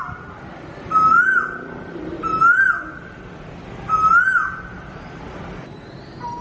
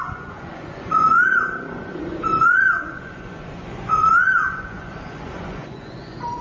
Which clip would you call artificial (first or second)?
second